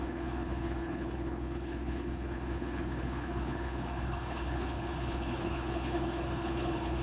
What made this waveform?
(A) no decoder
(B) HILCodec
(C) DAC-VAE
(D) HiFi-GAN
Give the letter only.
B